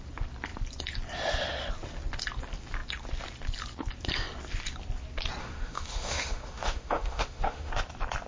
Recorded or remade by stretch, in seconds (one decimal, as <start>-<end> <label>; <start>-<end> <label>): 0.0-5.4 recorded; 5.4-7.7 remade; 7.7-8.3 recorded

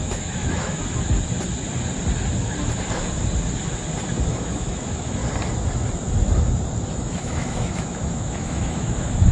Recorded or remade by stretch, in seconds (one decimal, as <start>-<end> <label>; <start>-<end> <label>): 0.0-0.8 remade; 0.8-4.3 recorded; 4.3-5.2 remade; 5.2-6.9 recorded; 6.9-9.3 remade

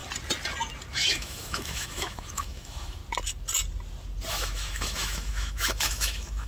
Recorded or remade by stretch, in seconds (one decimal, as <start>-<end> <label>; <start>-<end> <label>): 0.0-0.9 recorded; 0.9-3.0 remade; 3.0-4.3 recorded; 4.3-6.5 remade

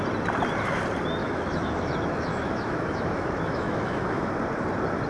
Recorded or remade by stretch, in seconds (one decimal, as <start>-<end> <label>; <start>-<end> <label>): 0.0-1.2 recorded; 1.2-4.3 remade; 4.3-5.1 recorded

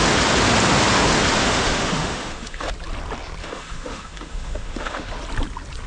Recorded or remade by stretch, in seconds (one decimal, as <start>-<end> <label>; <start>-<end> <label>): 0.0-1.4 recorded; 1.4-2.7 remade; 2.7-3.4 recorded; 3.4-5.1 remade; 5.1-5.9 recorded